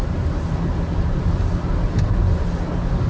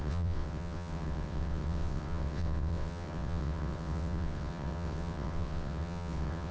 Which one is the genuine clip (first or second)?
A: first